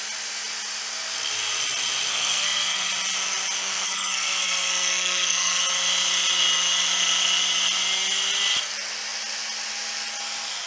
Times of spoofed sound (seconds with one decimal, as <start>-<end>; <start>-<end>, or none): 2.1-2.9; 3.6-5.6